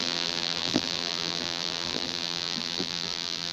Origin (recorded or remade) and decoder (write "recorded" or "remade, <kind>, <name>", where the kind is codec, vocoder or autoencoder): remade, vocoder, BigVGAN v2